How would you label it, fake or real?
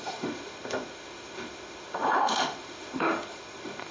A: fake